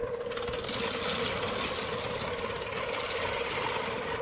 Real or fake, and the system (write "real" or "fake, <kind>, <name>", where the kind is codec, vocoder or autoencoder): real